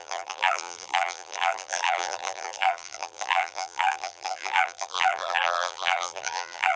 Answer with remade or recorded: remade